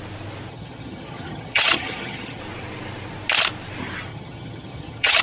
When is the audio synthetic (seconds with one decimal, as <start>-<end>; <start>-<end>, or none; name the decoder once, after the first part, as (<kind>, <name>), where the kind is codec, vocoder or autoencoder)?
0.5-2.4 (vocoder, HiFi-GAN); 4.1-5.2